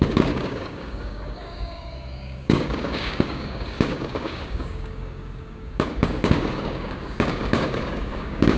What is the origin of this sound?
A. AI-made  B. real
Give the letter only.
A